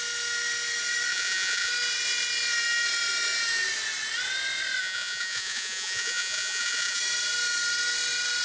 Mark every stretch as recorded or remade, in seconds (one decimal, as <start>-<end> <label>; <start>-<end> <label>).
0.0-1.1 recorded; 1.1-1.7 remade; 1.7-4.8 recorded; 4.8-7.0 remade; 7.0-8.4 recorded